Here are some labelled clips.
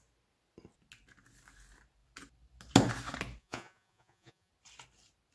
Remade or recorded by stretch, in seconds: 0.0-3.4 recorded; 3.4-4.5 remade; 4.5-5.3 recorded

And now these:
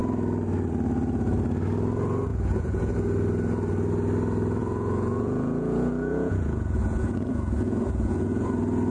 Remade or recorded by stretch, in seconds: 0.0-2.3 recorded; 2.3-2.9 remade; 2.9-4.6 recorded; 4.6-8.5 remade; 8.5-8.9 recorded

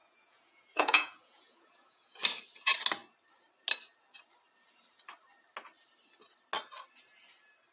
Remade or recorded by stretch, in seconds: 0.0-2.2 remade; 2.2-7.7 recorded

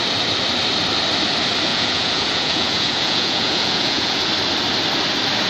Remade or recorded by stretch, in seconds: 0.0-1.7 recorded; 1.7-4.3 remade; 4.3-5.5 recorded